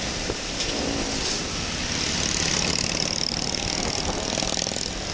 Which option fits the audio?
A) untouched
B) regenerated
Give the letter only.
A